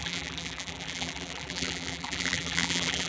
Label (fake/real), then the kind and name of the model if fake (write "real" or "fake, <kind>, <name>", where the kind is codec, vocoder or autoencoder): fake, vocoder, BigVGAN v2